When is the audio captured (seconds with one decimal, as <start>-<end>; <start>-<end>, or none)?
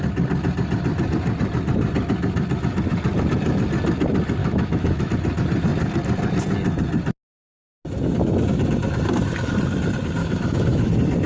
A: 0.0-4.4; 5.1-10.2; 10.9-11.3